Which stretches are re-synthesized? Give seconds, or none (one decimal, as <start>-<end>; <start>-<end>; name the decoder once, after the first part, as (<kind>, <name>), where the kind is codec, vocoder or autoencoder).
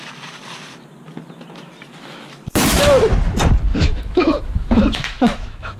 3.7-5.8 (autoencoder, DAC-VAE)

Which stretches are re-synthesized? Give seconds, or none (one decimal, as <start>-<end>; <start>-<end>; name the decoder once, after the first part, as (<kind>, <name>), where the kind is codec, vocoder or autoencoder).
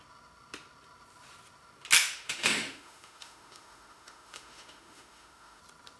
2.0-5.6 (autoencoder, DAC-VAE)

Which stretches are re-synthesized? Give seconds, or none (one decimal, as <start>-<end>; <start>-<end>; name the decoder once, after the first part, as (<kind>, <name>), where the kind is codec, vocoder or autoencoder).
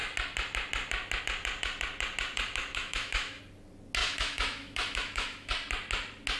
2.6-3.4 (autoencoder, DAC-VAE); 4.0-5.5